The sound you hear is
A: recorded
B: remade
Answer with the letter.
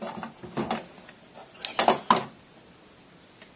A